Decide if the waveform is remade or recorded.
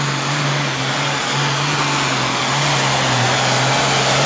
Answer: recorded